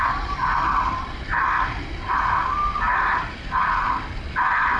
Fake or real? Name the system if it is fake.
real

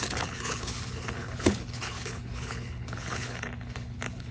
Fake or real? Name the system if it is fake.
fake, codec, HILCodec